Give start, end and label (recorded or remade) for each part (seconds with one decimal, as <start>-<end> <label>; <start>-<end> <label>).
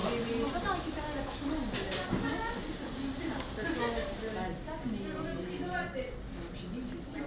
0.0-7.3 recorded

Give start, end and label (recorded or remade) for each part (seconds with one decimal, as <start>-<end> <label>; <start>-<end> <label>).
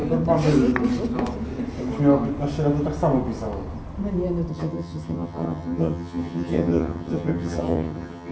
0.0-4.5 recorded; 4.5-8.3 remade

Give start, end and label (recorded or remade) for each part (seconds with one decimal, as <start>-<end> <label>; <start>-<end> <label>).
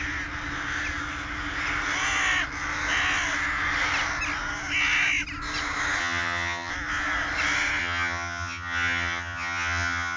0.0-6.0 recorded; 6.0-6.7 remade; 6.7-7.8 recorded; 7.8-10.2 remade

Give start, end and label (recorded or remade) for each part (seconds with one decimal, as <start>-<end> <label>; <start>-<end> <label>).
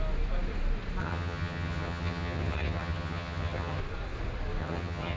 0.0-1.0 recorded; 1.0-3.8 remade; 3.8-4.6 recorded; 4.6-5.2 remade